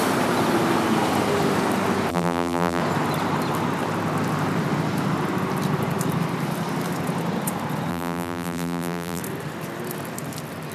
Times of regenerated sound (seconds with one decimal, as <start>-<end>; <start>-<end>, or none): 2.1-2.8; 7.9-9.2